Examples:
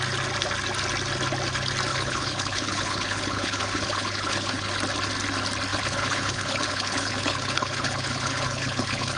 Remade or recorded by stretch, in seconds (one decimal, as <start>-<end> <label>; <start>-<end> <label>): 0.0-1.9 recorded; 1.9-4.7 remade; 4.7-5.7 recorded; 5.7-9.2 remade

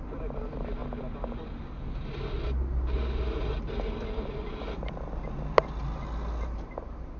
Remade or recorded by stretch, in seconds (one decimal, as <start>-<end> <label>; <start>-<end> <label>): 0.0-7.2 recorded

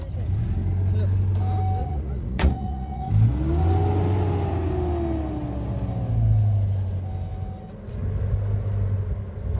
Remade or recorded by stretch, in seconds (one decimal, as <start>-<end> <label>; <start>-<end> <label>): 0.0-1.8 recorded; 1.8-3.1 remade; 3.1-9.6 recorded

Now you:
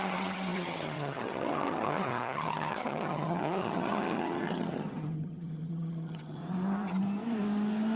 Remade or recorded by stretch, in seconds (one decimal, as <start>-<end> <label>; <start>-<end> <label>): 0.0-6.4 remade; 6.4-8.0 recorded

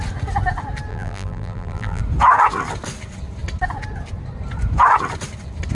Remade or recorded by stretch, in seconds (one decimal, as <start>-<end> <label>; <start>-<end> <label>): 0.0-0.9 recorded; 0.9-2.0 remade; 2.0-5.7 recorded